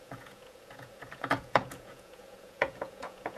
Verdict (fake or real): fake